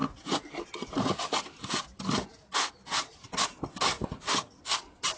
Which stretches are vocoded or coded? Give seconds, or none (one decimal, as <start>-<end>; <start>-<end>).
none